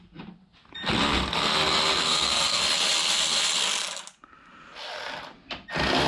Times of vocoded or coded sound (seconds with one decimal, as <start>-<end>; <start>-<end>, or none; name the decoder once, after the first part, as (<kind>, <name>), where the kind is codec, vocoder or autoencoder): 2.0-2.6 (codec, SNAC)